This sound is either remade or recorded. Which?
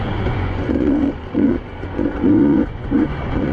remade